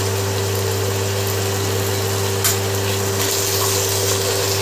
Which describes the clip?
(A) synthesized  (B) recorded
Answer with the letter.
B